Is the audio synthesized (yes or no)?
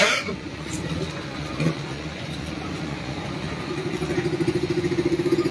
yes